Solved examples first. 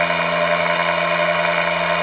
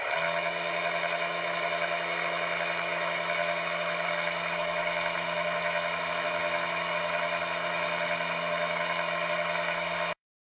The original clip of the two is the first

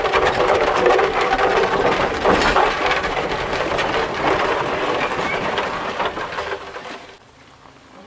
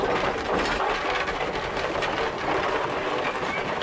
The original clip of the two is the second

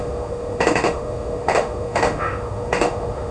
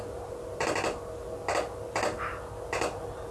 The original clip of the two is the second